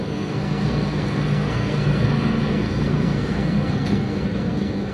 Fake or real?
fake